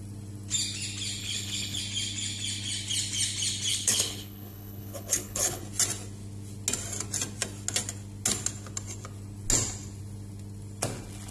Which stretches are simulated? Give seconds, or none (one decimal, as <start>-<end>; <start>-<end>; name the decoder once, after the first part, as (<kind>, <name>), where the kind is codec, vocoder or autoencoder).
1.2-1.8 (codec, HILCodec); 3.7-5.6